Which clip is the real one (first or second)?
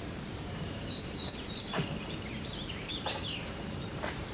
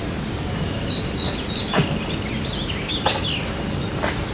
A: second